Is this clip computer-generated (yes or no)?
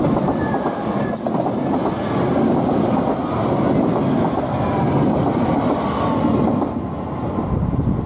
no